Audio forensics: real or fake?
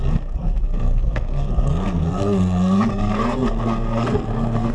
fake